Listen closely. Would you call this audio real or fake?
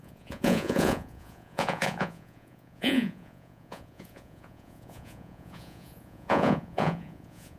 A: fake